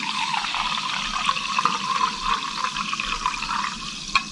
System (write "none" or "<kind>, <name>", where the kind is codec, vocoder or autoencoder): none